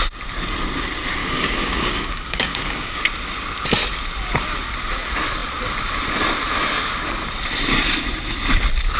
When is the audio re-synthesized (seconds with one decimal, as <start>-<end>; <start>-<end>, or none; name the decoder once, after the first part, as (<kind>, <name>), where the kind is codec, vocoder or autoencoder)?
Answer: 1.2-3.0 (codec, DAC)